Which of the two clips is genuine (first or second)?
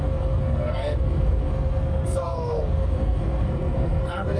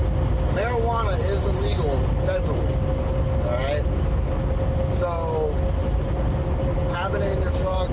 second